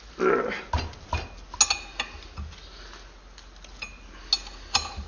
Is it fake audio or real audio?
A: real